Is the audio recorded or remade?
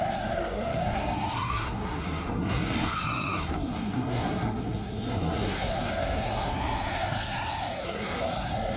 remade